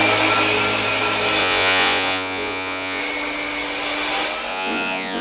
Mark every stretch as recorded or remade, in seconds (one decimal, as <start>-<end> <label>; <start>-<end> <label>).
0.0-1.4 recorded; 1.4-3.0 remade; 3.0-4.5 recorded; 4.5-5.2 remade